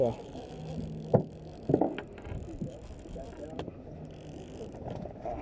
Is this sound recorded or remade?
recorded